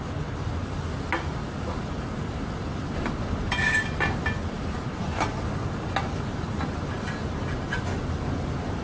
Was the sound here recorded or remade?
recorded